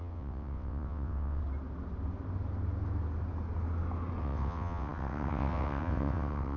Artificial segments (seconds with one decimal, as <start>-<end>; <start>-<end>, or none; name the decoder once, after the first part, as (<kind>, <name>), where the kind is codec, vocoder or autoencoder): 0.0-1.4 (vocoder, WaveNeXt); 4.2-6.6